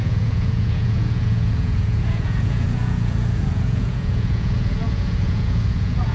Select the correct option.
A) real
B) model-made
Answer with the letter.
B